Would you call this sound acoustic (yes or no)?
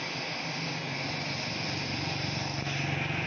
yes